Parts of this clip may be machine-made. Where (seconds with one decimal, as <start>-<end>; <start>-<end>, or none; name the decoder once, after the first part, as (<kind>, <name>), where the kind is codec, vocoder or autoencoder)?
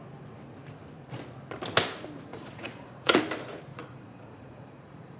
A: 2.3-3.2 (vocoder, Vocos); 3.7-5.2